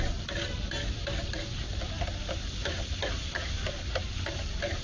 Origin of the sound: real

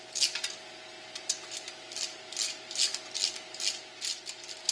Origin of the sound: real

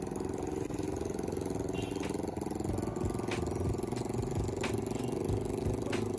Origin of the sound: real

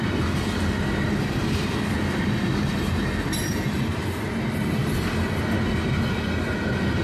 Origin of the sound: real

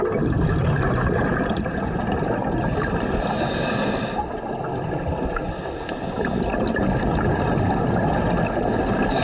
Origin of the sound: real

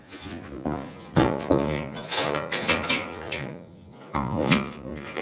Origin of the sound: fake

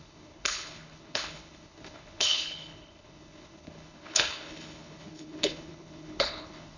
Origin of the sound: fake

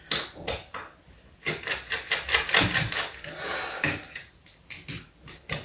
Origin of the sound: real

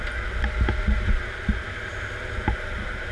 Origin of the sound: real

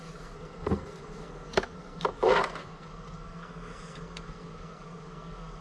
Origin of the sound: fake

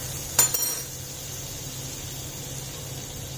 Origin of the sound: real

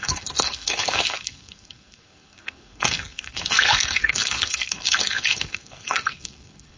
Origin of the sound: fake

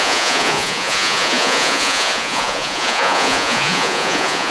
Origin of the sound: fake